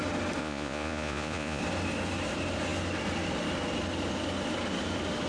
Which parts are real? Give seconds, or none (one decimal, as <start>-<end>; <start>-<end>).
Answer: 0.0-0.4; 1.6-5.3